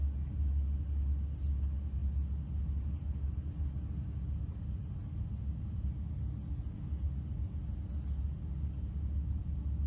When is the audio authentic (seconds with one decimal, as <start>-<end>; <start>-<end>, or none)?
0.0-9.9